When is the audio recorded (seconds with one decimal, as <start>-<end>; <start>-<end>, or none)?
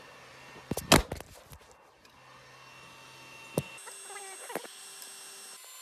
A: 0.0-5.8